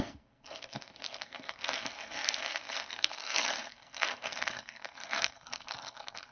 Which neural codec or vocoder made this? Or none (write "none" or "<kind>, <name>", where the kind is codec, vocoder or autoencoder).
codec, SNAC